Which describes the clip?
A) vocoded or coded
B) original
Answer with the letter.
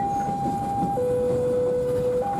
B